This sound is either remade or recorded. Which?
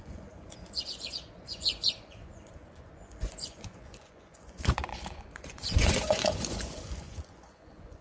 remade